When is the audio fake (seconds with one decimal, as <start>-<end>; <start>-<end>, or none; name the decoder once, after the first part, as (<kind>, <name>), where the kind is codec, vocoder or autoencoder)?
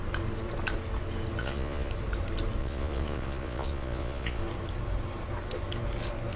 1.4-1.9 (vocoder, Vocos); 2.6-4.4